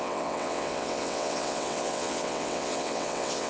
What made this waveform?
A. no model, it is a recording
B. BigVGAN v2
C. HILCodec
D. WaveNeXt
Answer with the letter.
D